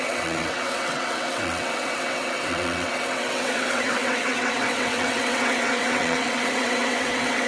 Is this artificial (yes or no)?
yes